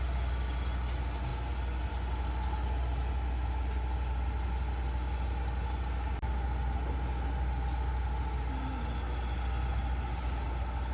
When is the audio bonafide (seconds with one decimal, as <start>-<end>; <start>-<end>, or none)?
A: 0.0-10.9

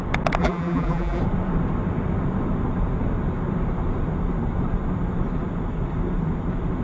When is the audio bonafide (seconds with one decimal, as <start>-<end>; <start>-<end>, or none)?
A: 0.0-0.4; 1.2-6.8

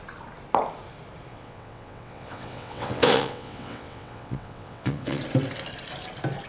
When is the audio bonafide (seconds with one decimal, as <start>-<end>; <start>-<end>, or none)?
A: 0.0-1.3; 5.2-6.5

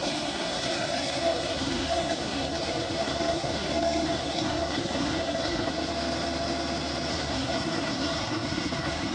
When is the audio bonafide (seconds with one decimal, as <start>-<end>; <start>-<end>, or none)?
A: 5.9-7.1

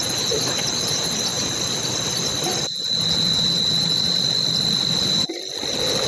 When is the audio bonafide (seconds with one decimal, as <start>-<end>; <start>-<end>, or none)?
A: 0.0-6.1